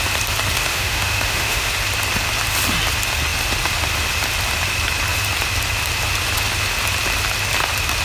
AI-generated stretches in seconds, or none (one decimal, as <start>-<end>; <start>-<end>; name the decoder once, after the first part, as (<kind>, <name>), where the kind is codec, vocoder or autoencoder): 0.7-1.7 (autoencoder, DAC-VAE)